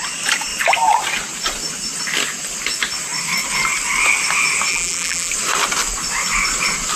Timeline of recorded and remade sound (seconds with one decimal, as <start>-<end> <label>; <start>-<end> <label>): 0.0-4.7 recorded; 4.7-5.3 remade; 5.3-7.0 recorded